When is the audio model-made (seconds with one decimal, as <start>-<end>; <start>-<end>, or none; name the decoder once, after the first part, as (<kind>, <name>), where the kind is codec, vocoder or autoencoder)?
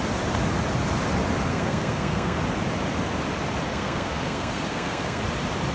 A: 1.5-2.4 (codec, SNAC); 3.7-5.2